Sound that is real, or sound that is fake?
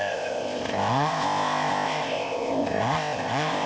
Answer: fake